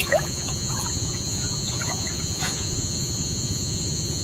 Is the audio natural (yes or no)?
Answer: no